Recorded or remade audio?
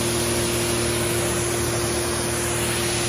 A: recorded